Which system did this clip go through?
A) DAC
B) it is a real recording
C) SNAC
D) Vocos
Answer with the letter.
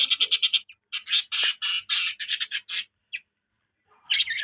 B